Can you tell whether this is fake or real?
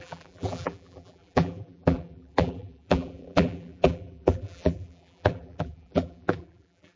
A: fake